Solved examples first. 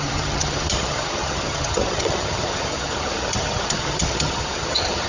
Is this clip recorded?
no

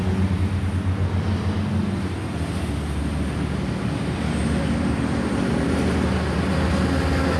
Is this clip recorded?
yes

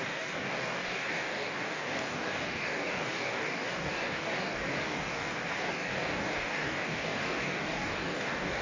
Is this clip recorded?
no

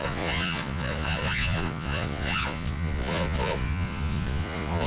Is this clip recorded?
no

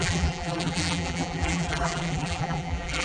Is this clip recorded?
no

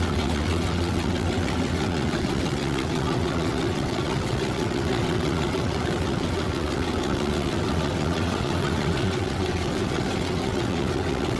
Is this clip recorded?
no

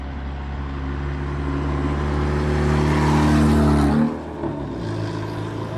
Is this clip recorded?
yes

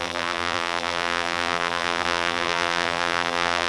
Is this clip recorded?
no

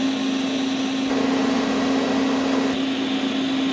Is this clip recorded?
yes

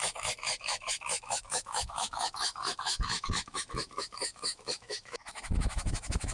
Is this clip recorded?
no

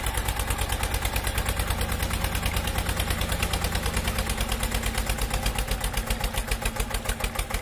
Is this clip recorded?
yes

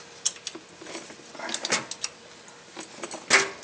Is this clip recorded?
yes